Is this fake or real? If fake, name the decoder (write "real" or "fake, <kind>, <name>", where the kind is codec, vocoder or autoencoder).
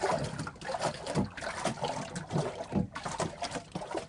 real